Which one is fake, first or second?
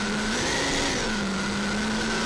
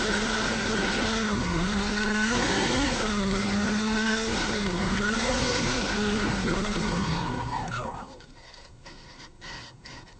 second